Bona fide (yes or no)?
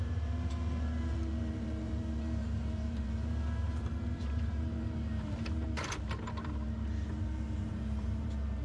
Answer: no